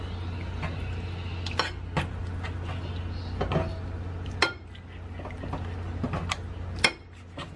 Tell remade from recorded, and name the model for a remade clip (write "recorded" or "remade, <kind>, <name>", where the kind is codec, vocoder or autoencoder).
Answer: recorded